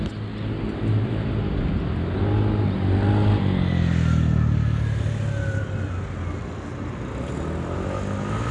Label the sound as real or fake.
real